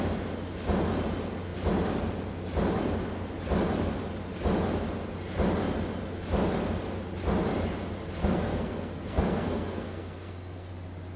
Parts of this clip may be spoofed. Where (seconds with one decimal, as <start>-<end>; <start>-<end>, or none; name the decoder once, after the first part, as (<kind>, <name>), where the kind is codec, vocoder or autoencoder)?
8.2-10.7 (codec, SNAC)